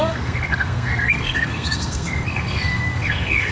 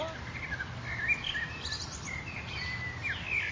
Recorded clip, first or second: second